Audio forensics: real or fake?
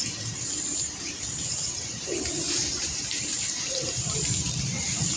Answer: fake